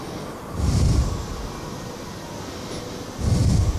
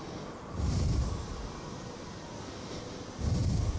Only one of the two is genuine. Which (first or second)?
first